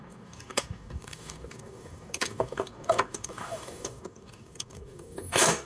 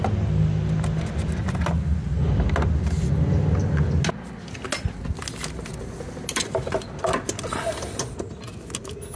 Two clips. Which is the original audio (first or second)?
second